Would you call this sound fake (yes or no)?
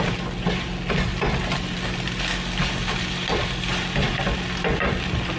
no